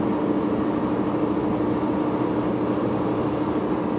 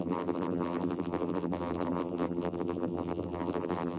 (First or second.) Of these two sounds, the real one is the first